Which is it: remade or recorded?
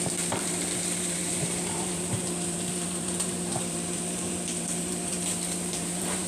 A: remade